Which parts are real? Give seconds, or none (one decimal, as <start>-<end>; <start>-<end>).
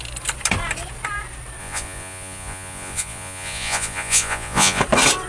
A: 0.0-1.6; 4.8-5.3